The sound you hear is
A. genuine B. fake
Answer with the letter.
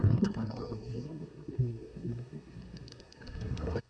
B